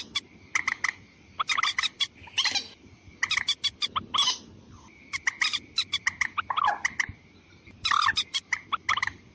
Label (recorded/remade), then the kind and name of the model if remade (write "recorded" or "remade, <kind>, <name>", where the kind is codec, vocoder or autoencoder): recorded